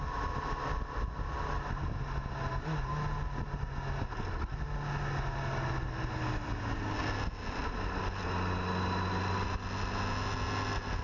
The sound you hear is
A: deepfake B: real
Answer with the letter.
B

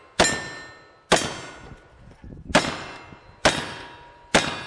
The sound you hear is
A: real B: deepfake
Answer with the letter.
A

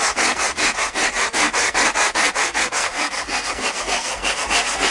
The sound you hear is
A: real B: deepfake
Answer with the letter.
B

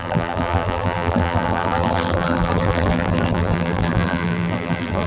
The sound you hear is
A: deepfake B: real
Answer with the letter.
A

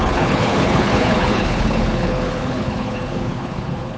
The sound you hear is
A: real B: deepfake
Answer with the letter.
B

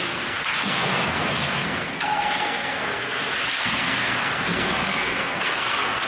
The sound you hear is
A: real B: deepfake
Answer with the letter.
B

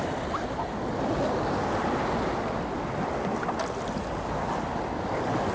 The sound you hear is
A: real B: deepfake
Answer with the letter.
A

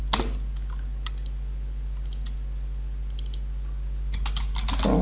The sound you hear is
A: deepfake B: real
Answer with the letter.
B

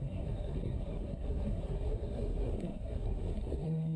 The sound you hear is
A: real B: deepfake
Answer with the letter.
B